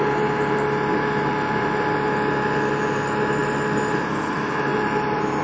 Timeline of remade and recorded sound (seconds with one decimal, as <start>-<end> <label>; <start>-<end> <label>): 0.0-0.9 recorded; 0.9-1.7 remade; 1.7-3.4 recorded; 3.4-4.0 remade; 4.0-4.7 recorded; 4.7-5.4 remade